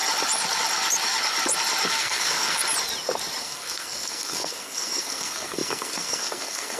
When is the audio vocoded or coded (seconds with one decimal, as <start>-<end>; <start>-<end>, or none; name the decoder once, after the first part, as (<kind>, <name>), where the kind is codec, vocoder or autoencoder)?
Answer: 1.9-2.6 (codec, SNAC); 3.4-6.8